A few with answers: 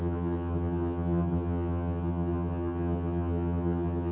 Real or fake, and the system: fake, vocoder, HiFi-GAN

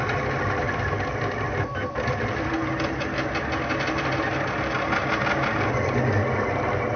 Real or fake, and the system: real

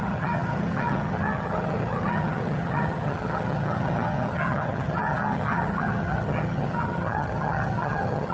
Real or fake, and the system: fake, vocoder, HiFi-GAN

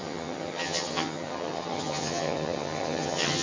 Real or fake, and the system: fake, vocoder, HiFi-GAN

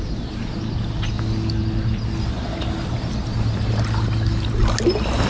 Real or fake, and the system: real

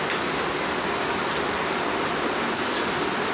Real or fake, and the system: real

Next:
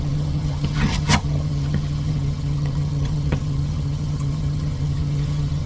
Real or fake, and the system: fake, vocoder, HiFi-GAN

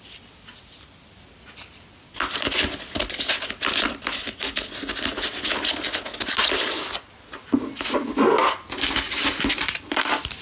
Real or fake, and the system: real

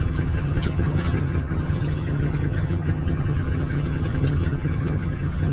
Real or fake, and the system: fake, vocoder, HiFi-GAN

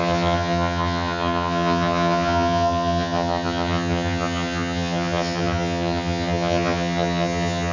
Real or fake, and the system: fake, vocoder, HiFi-GAN